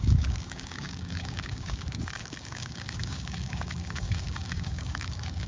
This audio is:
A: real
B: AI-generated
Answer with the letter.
B